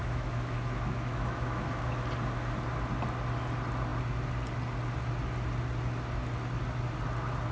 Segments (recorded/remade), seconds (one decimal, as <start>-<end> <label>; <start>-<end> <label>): 0.0-1.9 remade; 1.9-7.5 recorded